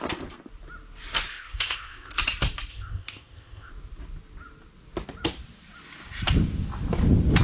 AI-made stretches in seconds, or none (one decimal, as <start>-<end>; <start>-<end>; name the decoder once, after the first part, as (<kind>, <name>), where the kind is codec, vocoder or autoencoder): 1.3-2.1 (codec, ZipCodec); 2.7-3.7